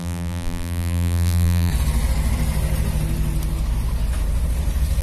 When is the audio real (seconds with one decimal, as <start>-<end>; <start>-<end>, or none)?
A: 1.7-5.0